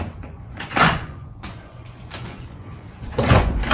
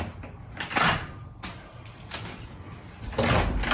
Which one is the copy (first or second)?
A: first